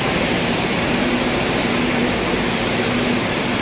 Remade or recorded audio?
remade